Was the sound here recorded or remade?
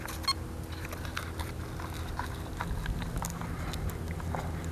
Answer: recorded